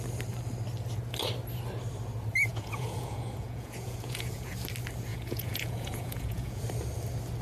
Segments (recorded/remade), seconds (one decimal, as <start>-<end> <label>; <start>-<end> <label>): 0.0-2.5 recorded; 2.5-4.5 remade; 4.5-5.1 recorded; 5.1-6.6 remade; 6.6-7.4 recorded